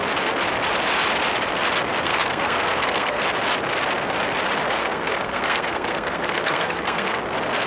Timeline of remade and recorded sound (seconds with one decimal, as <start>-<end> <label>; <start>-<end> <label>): 0.0-2.0 recorded; 2.0-3.2 remade; 3.2-4.8 recorded; 4.8-7.2 remade; 7.2-7.7 recorded